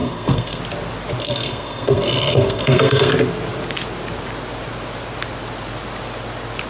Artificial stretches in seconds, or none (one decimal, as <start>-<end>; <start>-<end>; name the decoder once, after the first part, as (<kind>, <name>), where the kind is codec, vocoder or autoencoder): 0.0-0.6 (codec, SNAC); 1.2-3.1